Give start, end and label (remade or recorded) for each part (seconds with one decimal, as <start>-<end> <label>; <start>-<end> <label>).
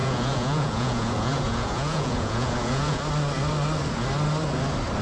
0.0-3.0 remade; 3.0-5.0 recorded